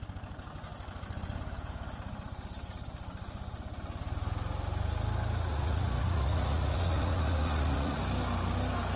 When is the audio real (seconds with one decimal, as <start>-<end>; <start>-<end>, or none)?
0.0-5.5; 8.0-9.0